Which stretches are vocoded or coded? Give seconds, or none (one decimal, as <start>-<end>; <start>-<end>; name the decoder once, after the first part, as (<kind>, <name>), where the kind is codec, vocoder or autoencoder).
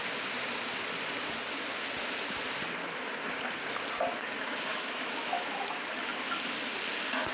4.7-5.9 (autoencoder, DAC-VAE)